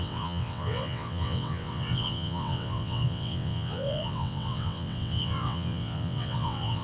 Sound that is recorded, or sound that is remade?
remade